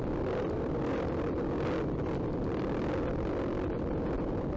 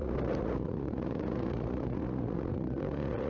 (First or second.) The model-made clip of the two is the second